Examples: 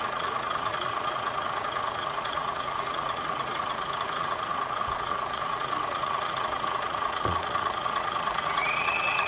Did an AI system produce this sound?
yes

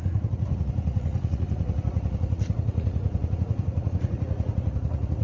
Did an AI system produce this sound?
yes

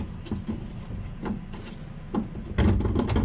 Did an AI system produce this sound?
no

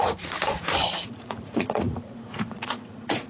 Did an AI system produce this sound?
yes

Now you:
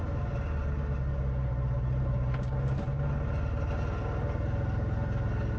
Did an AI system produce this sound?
no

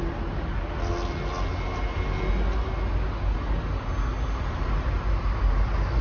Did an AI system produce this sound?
no